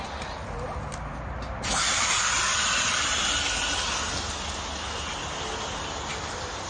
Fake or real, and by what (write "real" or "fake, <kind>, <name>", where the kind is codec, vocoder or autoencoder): real